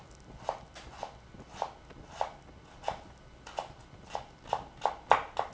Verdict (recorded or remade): recorded